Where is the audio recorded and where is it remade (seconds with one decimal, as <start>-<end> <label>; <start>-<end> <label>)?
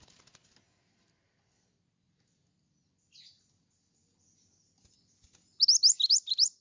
0.0-6.6 recorded